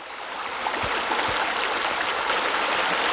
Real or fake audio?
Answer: real